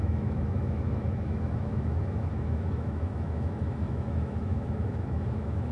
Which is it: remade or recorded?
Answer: remade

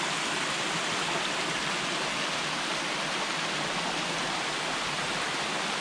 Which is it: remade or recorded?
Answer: recorded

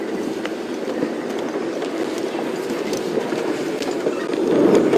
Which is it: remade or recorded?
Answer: remade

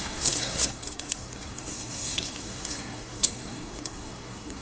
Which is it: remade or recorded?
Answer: remade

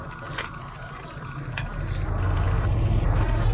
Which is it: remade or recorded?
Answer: recorded